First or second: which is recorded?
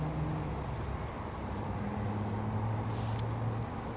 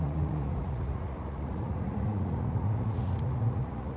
first